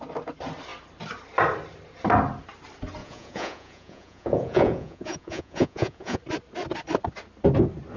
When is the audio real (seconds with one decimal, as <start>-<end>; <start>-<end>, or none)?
0.0-3.0; 6.2-8.0